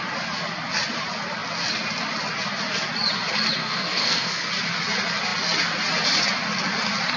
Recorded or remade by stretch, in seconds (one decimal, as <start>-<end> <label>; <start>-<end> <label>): 0.0-3.6 recorded; 3.6-4.5 remade; 4.5-7.2 recorded